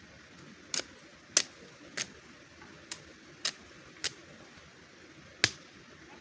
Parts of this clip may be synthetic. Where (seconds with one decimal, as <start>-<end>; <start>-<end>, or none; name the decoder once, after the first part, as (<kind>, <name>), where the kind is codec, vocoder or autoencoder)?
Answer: none